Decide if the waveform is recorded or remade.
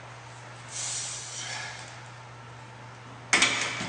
recorded